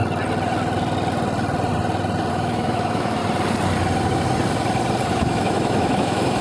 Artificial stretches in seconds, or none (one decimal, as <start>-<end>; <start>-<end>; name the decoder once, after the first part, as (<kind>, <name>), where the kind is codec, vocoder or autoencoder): 2.3-3.2 (autoencoder, DAC-VAE); 5.1-6.4